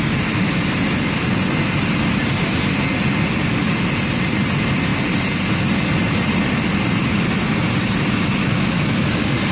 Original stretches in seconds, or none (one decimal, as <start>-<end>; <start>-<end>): 0.0-8.4; 9.1-9.5